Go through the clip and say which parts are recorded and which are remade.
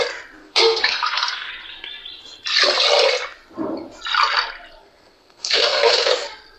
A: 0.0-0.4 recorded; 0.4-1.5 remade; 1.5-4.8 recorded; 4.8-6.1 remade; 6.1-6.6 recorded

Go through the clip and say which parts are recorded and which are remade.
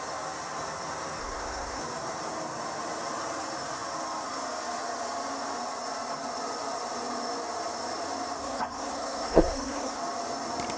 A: 0.0-1.2 recorded; 1.2-1.8 remade; 1.8-8.4 recorded; 8.4-10.0 remade; 10.0-10.8 recorded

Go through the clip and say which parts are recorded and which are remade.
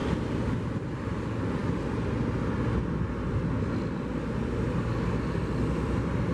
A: 0.0-6.3 recorded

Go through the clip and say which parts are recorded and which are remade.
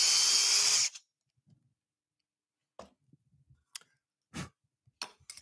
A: 0.0-5.4 recorded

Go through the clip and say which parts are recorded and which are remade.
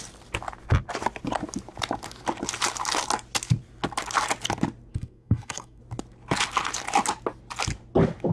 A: 0.0-4.9 recorded; 4.9-5.8 remade; 5.8-8.3 recorded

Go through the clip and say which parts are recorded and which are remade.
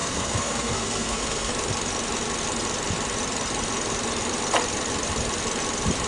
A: 0.0-1.5 remade; 1.5-6.1 recorded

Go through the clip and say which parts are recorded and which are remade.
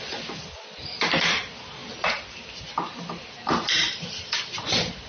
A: 0.0-5.1 recorded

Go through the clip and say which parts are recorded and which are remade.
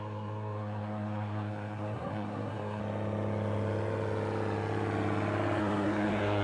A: 0.0-2.8 remade; 2.8-5.6 recorded; 5.6-6.4 remade